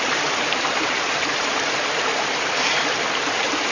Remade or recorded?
recorded